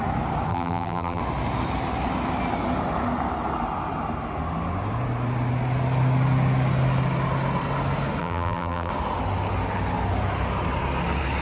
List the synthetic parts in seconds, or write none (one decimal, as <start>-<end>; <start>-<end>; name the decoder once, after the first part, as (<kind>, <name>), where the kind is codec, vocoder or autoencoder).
0.5-1.2 (vocoder, BigVGAN v2); 8.2-8.9